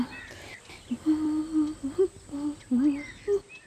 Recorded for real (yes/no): yes